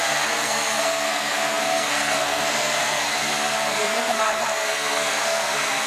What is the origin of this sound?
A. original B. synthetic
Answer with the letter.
B